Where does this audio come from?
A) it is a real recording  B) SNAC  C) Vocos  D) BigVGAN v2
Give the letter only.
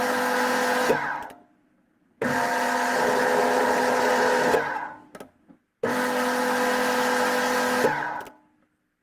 A